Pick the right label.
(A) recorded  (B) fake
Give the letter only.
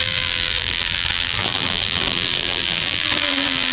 B